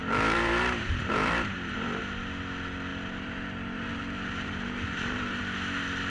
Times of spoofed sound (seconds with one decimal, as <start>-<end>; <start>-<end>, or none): 0.0-2.0; 2.9-5.4